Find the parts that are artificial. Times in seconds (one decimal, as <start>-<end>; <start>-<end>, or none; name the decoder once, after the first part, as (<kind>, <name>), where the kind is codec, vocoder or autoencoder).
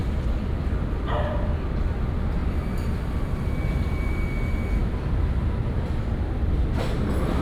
0.0-1.8 (vocoder, BigVGAN v2); 2.4-6.8